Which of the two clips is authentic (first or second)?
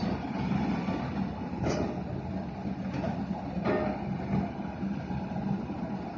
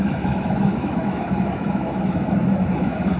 first